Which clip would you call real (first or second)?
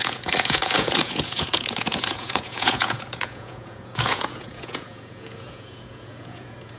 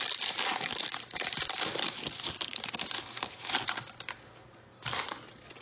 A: second